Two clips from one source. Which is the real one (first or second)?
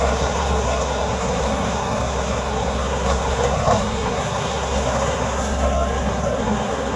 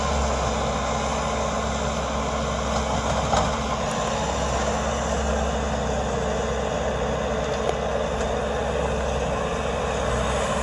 second